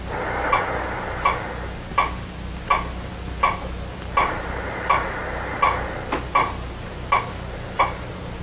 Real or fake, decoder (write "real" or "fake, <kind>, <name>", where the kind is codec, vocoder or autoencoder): real